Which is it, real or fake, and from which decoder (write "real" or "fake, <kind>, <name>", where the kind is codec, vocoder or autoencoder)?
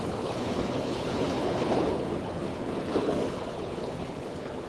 fake, codec, HILCodec